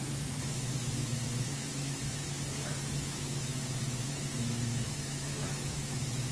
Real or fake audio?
fake